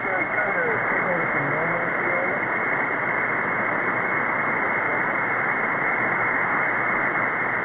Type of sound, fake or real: real